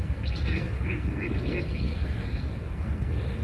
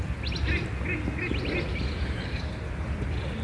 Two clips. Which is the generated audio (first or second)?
first